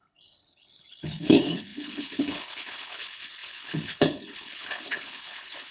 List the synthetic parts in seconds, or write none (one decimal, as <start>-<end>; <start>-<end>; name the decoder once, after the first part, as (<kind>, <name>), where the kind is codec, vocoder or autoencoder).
0.0-5.7 (codec, HILCodec)